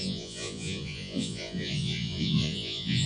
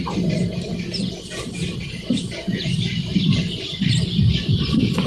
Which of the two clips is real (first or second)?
second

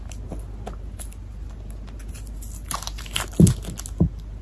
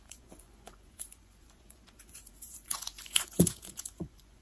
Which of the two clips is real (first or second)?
first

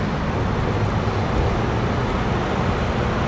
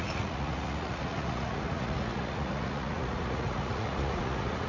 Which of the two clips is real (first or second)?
first